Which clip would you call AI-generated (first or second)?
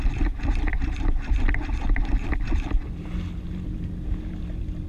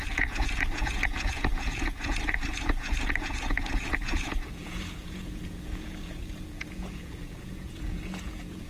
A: second